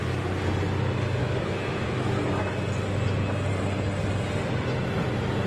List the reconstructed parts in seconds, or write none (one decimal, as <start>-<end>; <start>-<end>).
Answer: 1.2-2.5